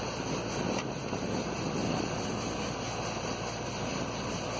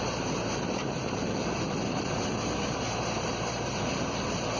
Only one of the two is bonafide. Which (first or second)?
first